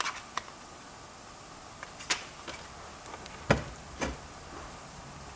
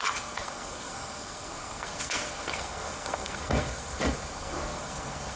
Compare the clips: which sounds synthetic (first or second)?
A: second